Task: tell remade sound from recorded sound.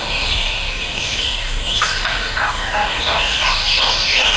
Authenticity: remade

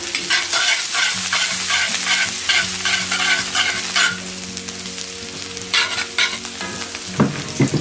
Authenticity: recorded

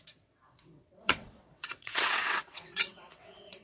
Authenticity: remade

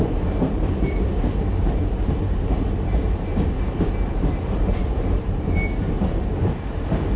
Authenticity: remade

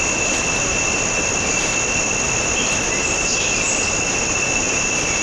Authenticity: recorded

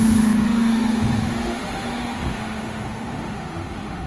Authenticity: remade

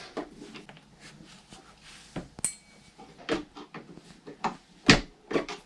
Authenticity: recorded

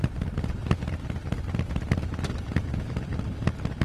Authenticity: recorded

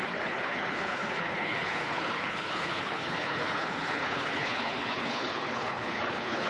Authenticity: remade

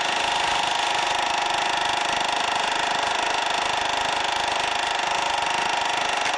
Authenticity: recorded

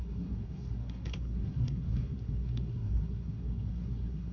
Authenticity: remade